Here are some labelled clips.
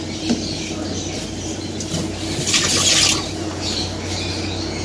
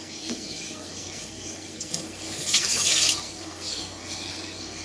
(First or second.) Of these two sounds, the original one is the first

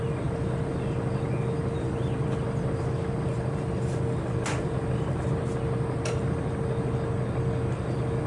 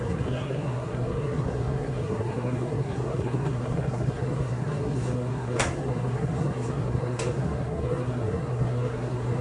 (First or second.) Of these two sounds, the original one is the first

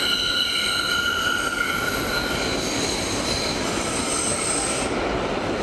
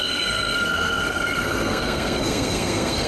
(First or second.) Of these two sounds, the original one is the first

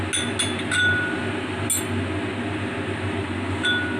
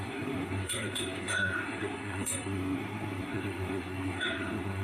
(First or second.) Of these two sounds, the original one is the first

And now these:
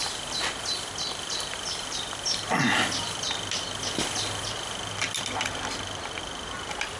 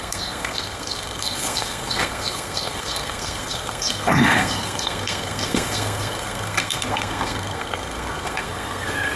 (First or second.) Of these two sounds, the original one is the first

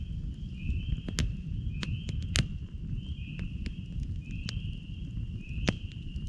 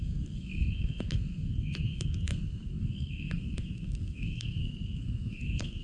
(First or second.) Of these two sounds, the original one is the first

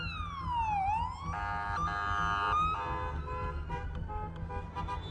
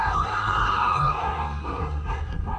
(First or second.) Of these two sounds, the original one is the first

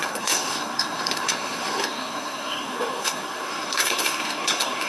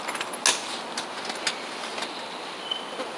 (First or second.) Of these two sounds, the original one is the second